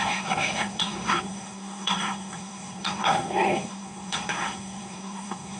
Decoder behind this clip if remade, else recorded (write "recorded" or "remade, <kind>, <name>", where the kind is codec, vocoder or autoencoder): remade, codec, SNAC